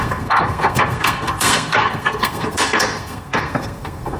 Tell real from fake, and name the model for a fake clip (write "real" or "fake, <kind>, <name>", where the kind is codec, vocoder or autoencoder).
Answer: fake, codec, SNAC